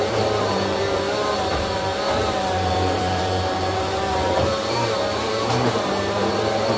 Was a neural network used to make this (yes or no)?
yes